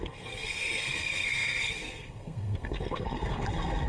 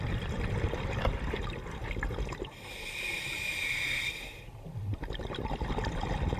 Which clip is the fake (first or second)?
first